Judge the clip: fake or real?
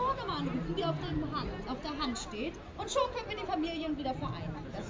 real